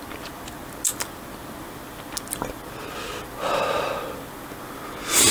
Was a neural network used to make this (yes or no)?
no